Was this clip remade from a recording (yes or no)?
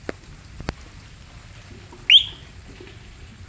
no